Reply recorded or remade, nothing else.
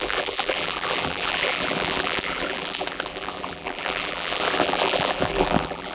remade